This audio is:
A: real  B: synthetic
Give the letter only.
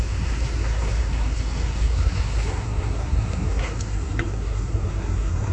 B